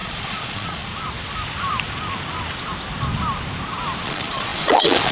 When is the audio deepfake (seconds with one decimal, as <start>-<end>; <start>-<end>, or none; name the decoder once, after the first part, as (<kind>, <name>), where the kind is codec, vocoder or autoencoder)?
0.0-0.9 (vocoder, Vocos); 4.0-5.1